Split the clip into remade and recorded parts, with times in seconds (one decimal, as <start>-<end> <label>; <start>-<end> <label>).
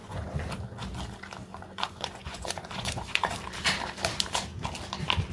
0.0-0.5 remade; 0.5-1.5 recorded; 1.5-3.3 remade; 3.3-5.3 recorded